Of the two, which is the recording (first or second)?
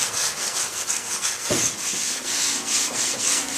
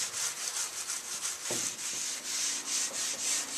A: second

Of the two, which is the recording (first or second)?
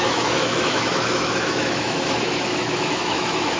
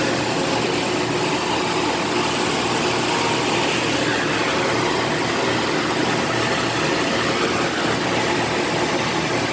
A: second